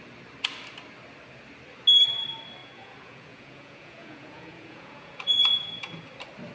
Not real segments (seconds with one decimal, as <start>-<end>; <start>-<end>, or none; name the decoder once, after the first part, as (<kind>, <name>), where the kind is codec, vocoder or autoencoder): 2.6-5.9 (vocoder, Vocos)